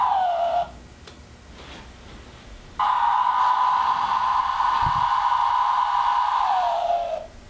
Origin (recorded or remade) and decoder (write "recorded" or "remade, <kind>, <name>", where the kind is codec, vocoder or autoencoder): recorded